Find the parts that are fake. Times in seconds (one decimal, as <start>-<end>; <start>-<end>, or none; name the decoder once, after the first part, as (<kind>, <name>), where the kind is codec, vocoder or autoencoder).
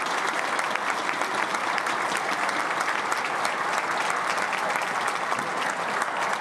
none